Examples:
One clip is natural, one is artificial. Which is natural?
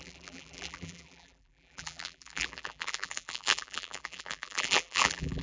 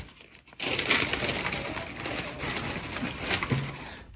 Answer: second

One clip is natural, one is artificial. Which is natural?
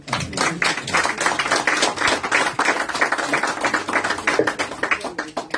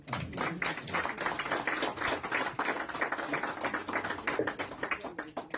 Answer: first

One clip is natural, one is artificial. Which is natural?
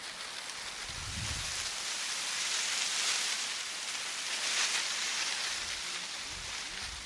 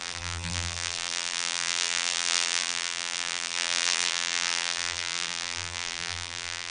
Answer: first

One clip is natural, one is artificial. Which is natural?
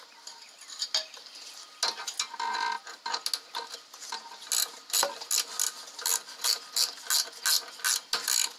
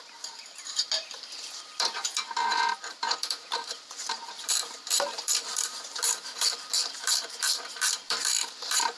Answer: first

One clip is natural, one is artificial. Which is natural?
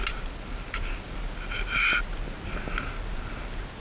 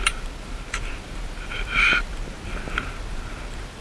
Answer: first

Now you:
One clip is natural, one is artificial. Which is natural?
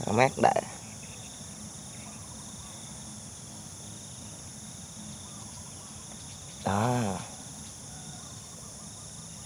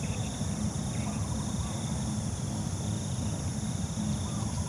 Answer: first